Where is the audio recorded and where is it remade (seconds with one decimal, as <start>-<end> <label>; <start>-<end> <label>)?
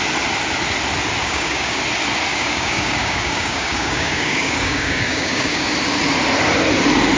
0.0-1.2 recorded; 1.2-1.8 remade; 1.8-2.3 recorded; 2.3-5.7 remade; 5.7-7.2 recorded